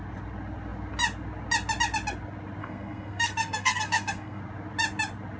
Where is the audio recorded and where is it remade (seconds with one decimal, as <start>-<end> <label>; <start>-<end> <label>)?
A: 0.0-2.6 recorded; 2.6-4.4 remade; 4.4-5.4 recorded